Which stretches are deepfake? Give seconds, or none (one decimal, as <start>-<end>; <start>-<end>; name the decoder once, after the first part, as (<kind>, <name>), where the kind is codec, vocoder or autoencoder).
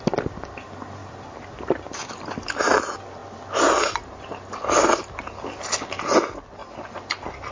1.0-2.1 (vocoder, BigVGAN v2)